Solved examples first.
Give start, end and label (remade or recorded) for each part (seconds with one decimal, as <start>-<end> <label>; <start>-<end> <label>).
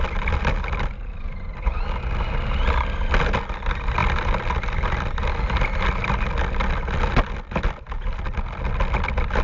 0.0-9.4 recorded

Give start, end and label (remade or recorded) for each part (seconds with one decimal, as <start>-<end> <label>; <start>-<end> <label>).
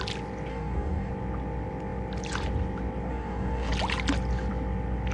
0.0-0.5 recorded; 0.5-1.1 remade; 1.1-3.1 recorded; 3.1-3.7 remade; 3.7-5.1 recorded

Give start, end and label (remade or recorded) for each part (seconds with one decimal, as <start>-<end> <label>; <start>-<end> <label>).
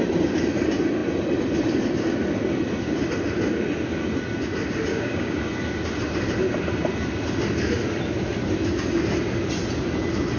0.0-4.9 recorded; 4.9-5.4 remade; 5.4-10.4 recorded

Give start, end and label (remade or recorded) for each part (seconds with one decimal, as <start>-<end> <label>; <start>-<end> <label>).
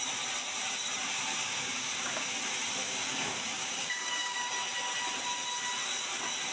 0.0-1.3 recorded; 1.3-2.3 remade; 2.3-2.8 recorded; 2.8-4.5 remade; 4.5-6.5 recorded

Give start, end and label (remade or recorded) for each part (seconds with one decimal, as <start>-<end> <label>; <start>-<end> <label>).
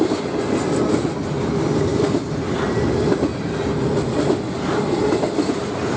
0.0-6.0 recorded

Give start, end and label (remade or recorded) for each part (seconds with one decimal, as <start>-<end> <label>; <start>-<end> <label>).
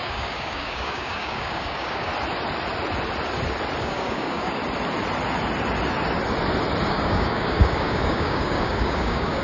0.0-2.1 remade; 2.1-3.8 recorded; 3.8-4.6 remade; 4.6-6.9 recorded; 6.9-9.4 remade